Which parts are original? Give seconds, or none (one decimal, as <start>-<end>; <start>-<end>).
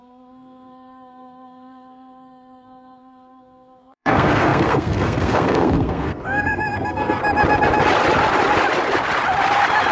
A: 7.2-9.9